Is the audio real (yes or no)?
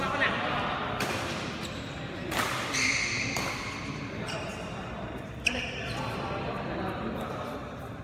yes